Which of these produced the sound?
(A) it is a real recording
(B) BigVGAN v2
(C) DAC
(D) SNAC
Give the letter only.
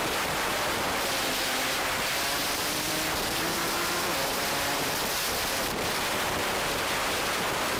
B